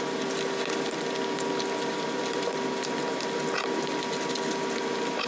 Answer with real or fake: real